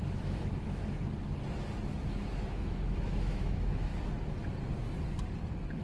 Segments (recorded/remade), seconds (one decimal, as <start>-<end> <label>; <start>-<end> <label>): 0.0-0.8 remade; 0.8-2.0 recorded; 2.0-3.9 remade; 3.9-5.8 recorded